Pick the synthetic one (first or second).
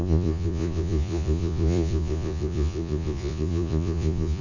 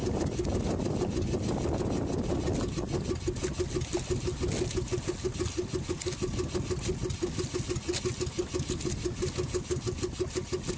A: first